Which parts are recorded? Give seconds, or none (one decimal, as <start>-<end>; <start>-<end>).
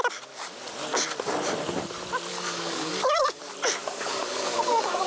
0.0-2.3; 3.4-3.8